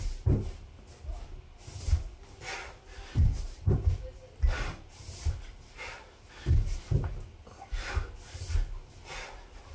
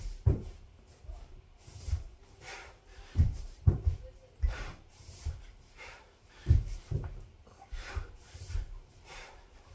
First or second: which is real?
first